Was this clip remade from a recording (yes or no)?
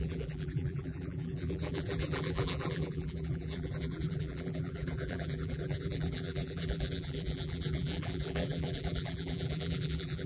yes